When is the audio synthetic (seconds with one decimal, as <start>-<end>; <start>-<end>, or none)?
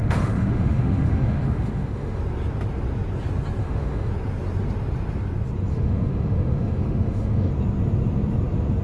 0.0-2.2; 3.6-4.1; 5.7-7.5